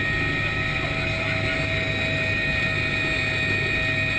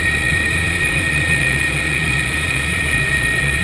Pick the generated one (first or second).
second